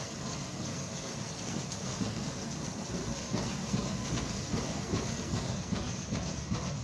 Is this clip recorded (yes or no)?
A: no